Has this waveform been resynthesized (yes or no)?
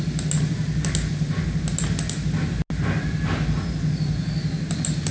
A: no